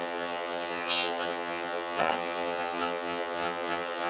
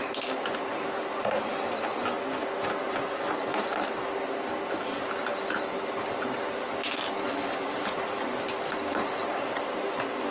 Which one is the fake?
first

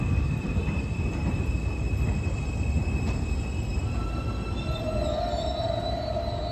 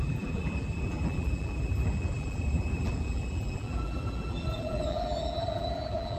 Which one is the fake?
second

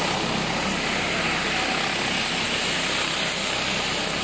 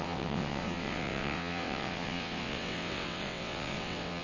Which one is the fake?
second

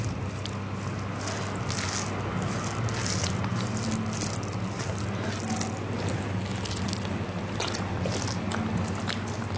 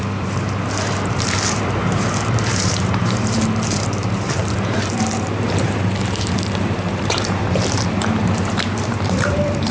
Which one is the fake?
second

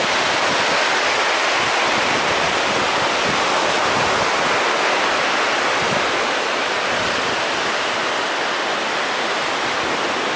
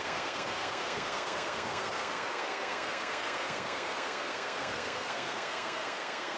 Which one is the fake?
second